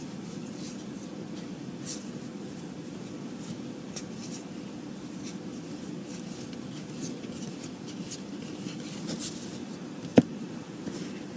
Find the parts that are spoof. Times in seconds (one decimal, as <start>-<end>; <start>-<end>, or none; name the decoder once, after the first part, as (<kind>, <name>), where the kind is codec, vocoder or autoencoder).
10.1-10.8 (vocoder, BigVGAN v2)